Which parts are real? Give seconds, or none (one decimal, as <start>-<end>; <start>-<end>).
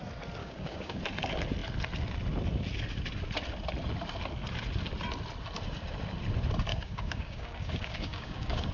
0.0-0.4; 1.0-6.7